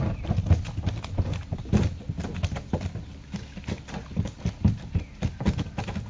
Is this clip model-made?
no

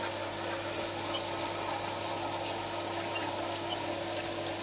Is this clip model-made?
no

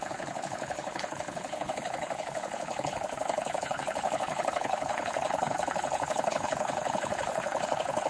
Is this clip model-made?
yes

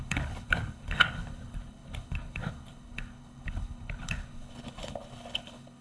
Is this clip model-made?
yes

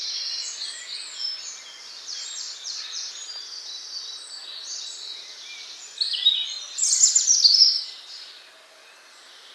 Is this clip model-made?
no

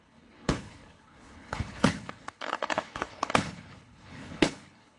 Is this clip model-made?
yes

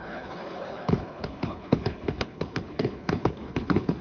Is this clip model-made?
yes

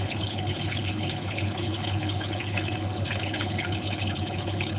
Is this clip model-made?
yes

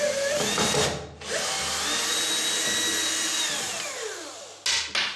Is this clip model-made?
no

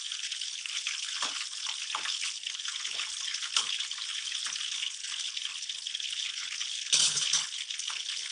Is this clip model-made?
yes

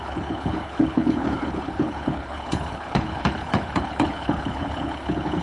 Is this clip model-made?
yes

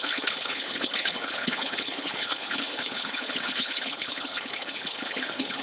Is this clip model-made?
yes